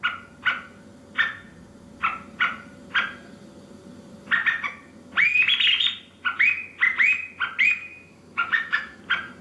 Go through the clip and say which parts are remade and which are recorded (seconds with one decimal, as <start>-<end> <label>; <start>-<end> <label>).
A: 0.0-7.8 recorded; 7.8-9.0 remade; 9.0-9.4 recorded